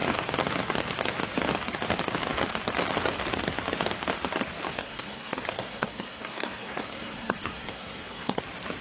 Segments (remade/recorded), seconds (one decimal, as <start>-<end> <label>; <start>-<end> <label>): 0.0-4.7 recorded; 4.7-8.4 remade; 8.4-8.8 recorded